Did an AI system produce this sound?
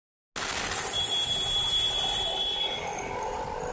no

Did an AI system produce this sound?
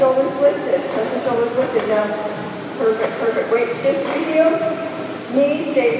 yes